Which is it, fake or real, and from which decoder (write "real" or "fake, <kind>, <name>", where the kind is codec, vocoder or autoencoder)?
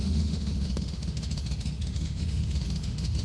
fake, autoencoder, DAC-VAE